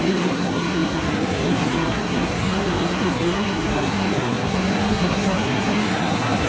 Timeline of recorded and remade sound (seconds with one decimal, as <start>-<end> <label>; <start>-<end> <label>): 0.0-6.5 remade